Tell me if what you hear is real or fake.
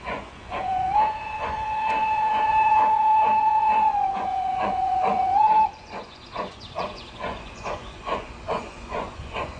fake